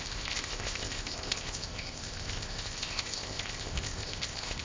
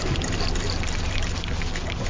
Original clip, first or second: second